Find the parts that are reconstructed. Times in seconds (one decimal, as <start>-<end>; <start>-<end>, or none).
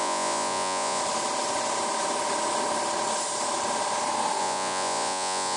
0.0-1.0; 4.4-5.6